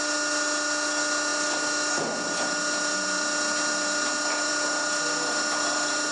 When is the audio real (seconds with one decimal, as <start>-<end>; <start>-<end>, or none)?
0.0-6.1